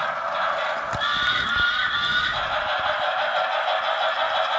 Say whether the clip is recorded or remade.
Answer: recorded